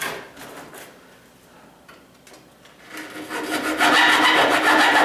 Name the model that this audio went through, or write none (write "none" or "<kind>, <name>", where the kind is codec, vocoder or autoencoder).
none